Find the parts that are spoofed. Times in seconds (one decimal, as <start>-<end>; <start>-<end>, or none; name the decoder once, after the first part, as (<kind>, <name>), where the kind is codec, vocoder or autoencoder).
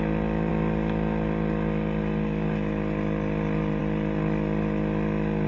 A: none